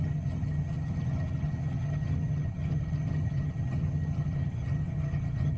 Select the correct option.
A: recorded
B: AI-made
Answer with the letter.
B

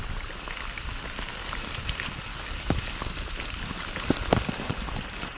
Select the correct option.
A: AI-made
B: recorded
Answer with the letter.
B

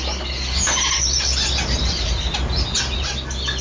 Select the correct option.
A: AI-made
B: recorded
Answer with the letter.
B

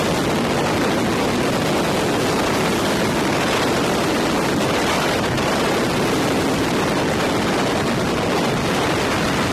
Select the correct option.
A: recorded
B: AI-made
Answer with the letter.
A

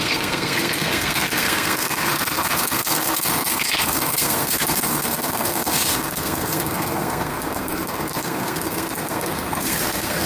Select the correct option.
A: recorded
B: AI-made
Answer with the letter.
B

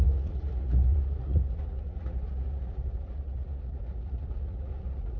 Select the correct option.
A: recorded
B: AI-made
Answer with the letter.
B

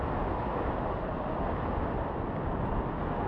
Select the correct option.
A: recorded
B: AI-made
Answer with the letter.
A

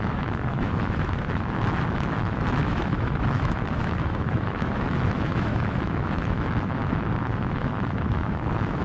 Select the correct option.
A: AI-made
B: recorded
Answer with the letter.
A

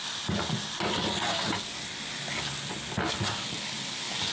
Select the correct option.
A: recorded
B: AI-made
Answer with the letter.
A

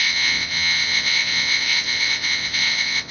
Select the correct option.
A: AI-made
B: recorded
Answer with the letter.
A